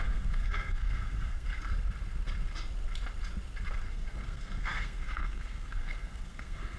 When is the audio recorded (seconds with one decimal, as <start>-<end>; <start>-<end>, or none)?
1.6-3.9